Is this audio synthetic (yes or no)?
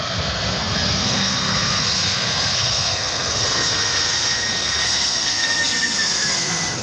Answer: yes